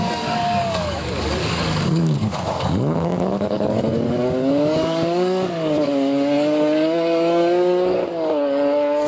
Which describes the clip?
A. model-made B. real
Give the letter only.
A